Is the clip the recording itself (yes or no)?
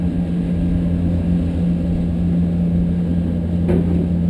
yes